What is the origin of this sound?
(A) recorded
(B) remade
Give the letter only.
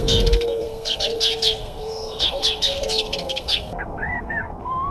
B